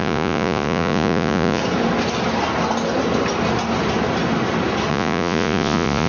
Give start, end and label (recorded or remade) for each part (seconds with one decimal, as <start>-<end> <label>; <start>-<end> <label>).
0.0-1.6 remade; 1.6-4.9 recorded; 4.9-6.1 remade